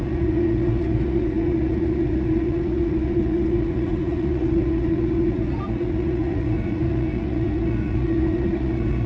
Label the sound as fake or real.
fake